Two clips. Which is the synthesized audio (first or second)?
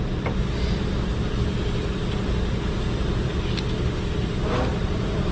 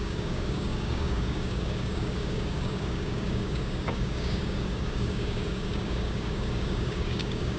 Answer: second